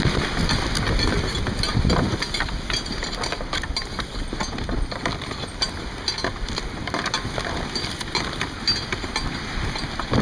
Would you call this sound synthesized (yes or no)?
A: no